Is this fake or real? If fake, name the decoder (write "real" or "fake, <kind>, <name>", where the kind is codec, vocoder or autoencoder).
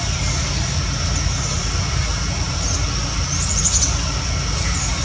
real